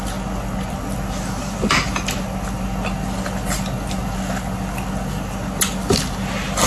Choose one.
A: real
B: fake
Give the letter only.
A